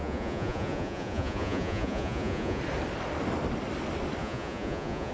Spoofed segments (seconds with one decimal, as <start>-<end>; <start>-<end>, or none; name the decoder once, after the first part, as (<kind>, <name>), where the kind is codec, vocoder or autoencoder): 0.0-2.6 (vocoder, Vocos); 4.2-5.1